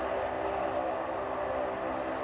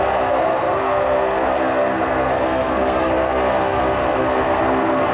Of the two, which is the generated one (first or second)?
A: second